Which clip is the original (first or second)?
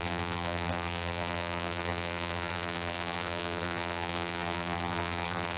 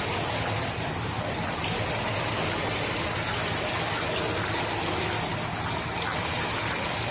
second